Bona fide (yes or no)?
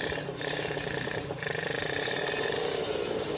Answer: no